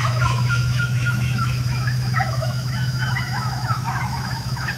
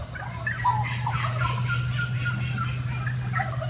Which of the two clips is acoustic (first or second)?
second